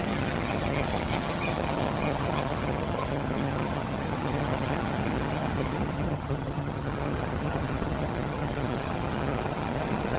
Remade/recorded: remade